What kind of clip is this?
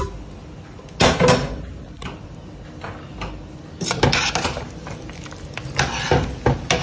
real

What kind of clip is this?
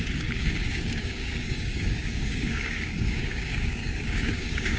fake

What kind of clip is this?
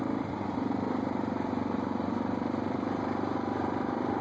real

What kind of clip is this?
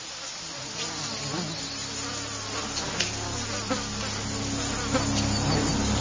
real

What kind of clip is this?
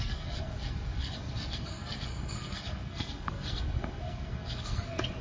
fake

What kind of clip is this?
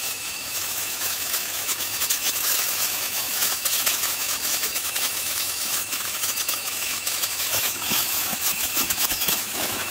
fake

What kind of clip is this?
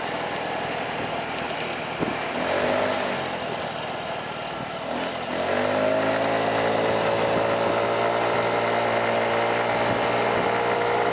real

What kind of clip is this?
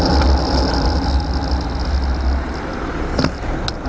real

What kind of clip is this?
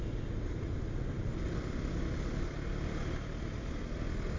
real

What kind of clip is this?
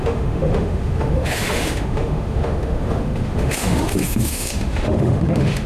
fake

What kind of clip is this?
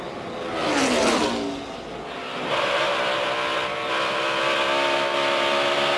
real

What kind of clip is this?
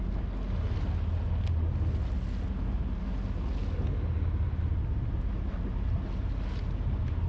real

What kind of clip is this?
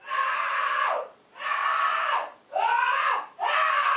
real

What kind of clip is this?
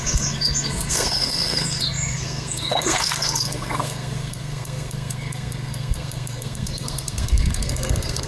fake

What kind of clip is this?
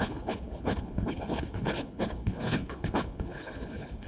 fake